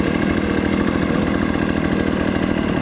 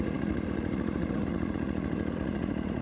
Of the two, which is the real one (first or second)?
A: first